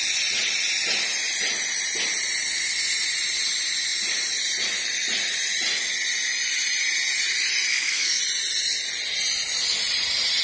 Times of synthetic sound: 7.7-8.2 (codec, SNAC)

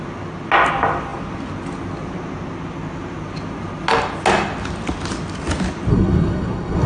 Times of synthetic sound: 5.9-6.9 (codec, SNAC)

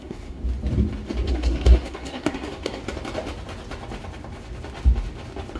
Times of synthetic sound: 0.0-0.4 (codec, SNAC); 1.3-2.8